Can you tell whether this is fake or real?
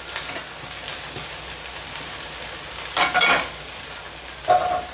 real